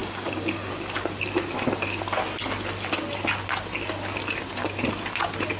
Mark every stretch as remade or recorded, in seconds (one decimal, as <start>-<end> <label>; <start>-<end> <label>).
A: 0.0-0.7 remade; 0.7-5.6 recorded